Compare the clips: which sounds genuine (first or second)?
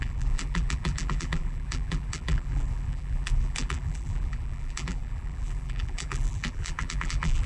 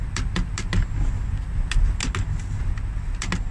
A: second